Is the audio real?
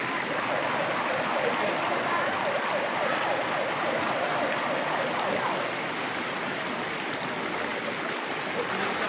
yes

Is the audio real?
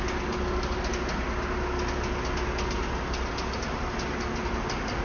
yes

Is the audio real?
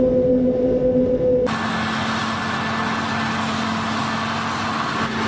yes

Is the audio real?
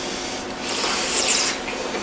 yes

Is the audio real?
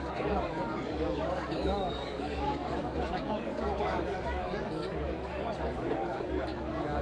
no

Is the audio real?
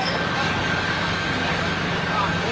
no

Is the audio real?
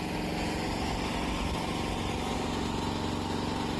yes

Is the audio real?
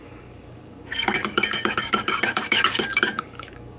no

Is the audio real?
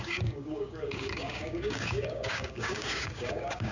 no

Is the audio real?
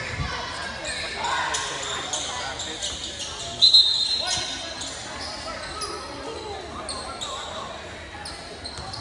yes